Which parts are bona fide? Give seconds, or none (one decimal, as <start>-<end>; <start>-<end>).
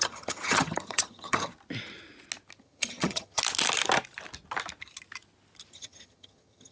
1.5-2.6; 3.4-5.7